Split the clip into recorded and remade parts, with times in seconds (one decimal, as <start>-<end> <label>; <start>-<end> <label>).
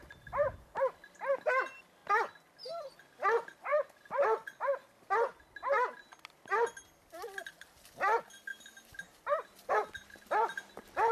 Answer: 0.0-11.1 recorded